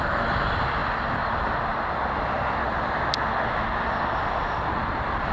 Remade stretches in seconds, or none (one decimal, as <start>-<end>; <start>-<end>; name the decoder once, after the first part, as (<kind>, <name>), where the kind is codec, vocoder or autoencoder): none

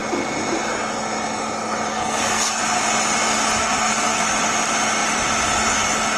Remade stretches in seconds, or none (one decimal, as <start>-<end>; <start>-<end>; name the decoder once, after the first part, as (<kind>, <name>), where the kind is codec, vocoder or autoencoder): 1.9-2.6 (codec, SNAC); 3.6-4.3